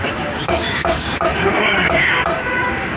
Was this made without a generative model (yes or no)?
no